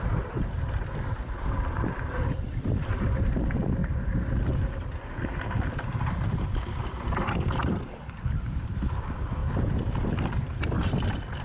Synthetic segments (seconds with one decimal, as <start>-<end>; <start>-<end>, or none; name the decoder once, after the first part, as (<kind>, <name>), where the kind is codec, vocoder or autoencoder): 0.0-9.4 (vocoder, BigVGAN v2); 10.3-11.4